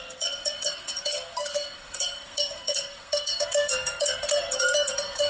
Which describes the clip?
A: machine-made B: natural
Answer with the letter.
A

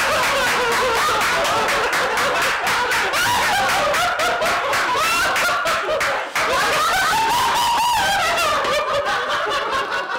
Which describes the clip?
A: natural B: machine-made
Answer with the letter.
A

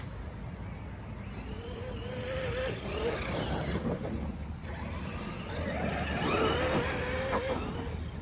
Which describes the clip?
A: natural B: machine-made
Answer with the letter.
A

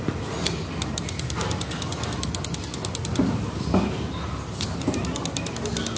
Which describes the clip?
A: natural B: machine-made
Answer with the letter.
A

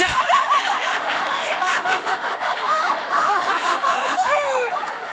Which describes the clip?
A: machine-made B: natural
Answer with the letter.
A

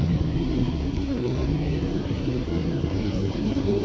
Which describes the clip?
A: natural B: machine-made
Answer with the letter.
B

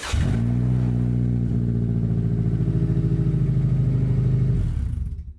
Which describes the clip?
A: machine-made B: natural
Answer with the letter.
B